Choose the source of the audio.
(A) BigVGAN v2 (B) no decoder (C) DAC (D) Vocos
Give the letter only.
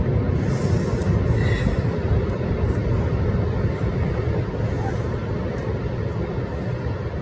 B